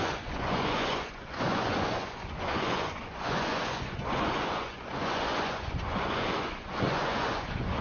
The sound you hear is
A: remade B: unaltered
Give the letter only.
A